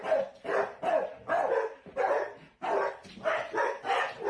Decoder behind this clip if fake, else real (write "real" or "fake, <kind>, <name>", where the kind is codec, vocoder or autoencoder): real